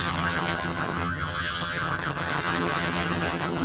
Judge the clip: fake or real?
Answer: fake